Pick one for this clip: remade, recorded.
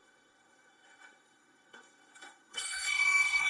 remade